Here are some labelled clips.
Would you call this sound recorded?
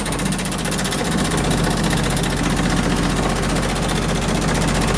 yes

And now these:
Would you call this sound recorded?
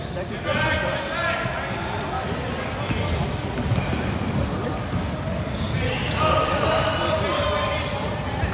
yes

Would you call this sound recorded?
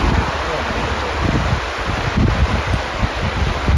yes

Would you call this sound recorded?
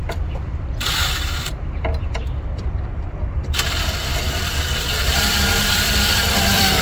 no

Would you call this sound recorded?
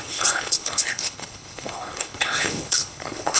no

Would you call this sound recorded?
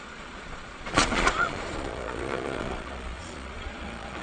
no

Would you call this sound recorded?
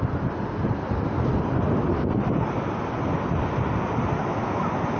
yes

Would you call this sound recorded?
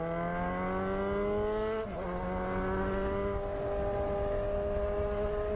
yes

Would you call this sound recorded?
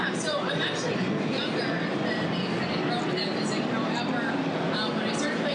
no